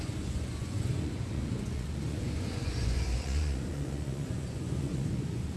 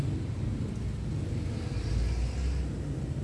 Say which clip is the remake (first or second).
first